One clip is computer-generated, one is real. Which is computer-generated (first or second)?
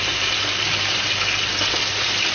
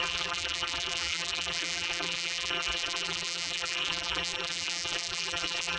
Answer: second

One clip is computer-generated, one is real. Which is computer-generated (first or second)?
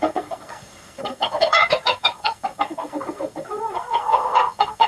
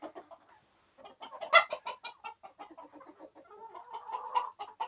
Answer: first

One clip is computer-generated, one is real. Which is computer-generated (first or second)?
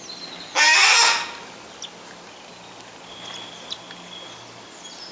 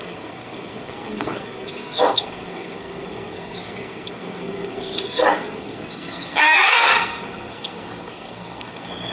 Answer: second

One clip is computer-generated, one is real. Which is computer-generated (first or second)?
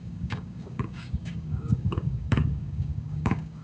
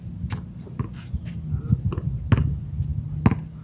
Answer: first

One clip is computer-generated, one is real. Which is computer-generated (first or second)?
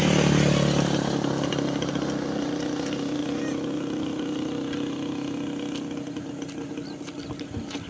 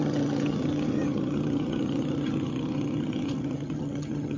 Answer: second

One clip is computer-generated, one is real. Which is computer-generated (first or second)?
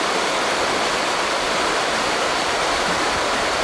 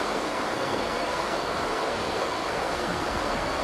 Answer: second